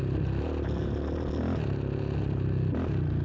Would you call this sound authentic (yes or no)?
yes